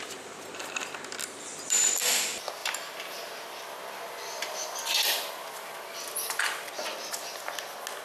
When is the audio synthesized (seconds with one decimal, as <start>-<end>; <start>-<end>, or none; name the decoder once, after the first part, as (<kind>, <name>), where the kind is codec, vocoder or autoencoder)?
1.2-1.9 (vocoder, BigVGAN v2); 2.6-4.8